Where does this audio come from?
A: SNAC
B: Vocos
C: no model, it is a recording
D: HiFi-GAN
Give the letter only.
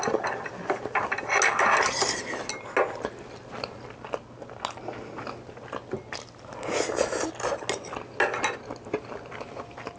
C